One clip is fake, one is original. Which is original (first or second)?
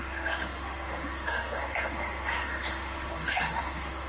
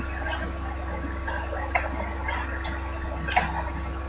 second